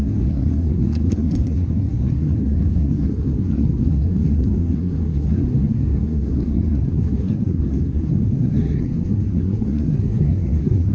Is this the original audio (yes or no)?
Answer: no